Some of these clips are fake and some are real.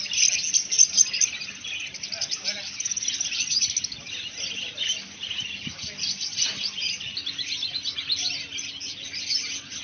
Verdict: real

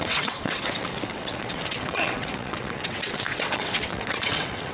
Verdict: fake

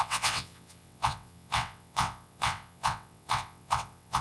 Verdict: fake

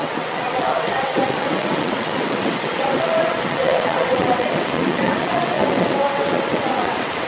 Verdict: fake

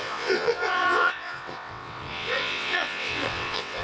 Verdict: fake